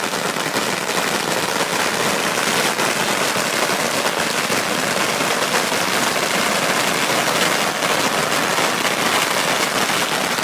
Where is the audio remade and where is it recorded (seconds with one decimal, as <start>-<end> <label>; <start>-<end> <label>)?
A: 0.0-10.4 recorded